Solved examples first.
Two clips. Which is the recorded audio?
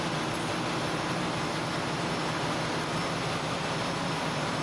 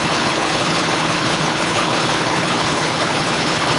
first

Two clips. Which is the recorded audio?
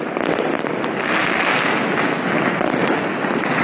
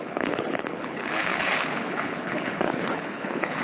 first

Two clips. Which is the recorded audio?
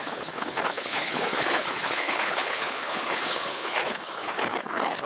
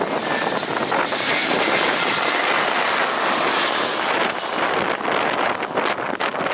second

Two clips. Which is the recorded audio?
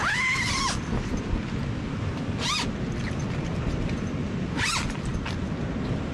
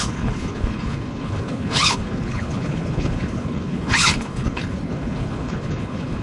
first